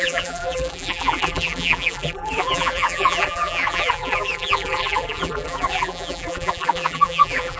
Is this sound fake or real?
fake